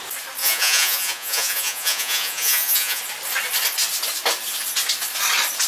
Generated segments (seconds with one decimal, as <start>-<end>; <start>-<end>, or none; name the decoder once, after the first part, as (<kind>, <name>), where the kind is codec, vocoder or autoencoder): 0.4-3.0 (vocoder, Vocos)